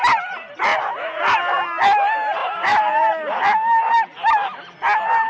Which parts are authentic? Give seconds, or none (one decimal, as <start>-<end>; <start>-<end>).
0.0-2.4; 3.1-5.3